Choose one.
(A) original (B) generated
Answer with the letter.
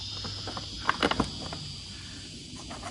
A